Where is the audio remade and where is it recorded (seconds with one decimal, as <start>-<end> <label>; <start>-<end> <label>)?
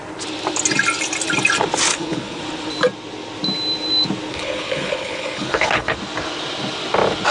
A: 0.0-1.9 recorded; 1.9-2.4 remade; 2.4-4.3 recorded; 4.3-6.0 remade; 6.0-7.3 recorded